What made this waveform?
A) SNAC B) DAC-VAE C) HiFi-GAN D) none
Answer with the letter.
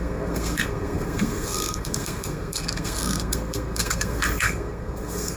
A